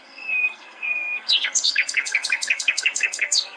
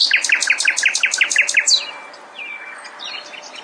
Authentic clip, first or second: second